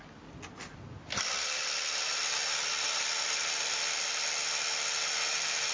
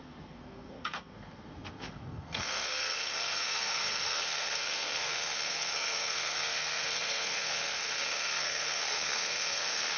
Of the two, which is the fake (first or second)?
second